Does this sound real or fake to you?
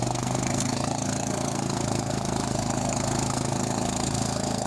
fake